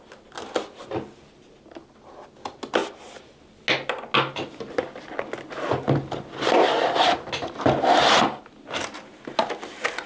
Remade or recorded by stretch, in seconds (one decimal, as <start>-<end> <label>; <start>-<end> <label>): 0.0-10.1 recorded